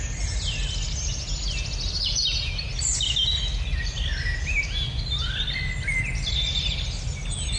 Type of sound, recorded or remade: recorded